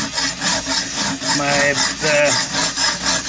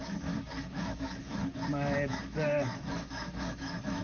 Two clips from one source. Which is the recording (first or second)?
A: first